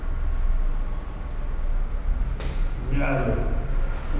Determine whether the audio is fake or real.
real